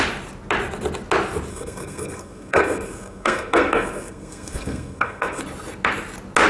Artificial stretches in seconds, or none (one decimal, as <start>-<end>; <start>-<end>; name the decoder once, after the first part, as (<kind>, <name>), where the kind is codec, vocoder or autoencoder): 1.5-5.4 (codec, SNAC)